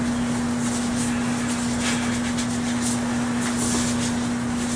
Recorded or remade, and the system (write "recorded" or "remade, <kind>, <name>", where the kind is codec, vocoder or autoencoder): recorded